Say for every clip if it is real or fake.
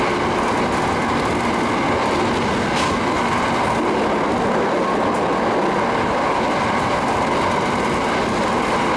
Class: real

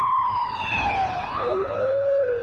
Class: fake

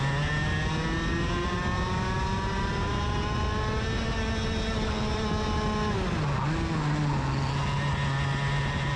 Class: real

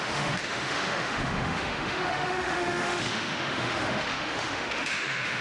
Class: fake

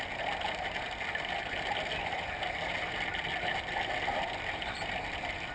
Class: real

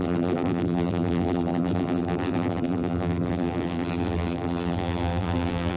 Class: fake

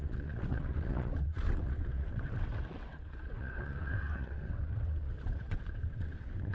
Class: fake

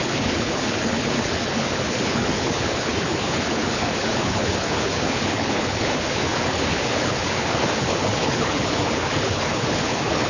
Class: fake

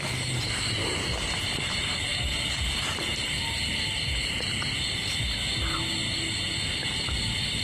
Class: real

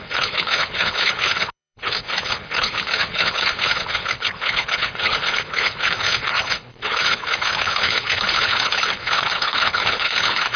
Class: fake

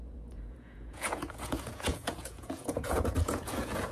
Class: fake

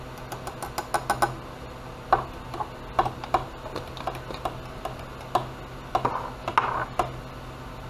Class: real